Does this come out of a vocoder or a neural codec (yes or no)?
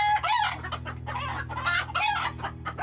no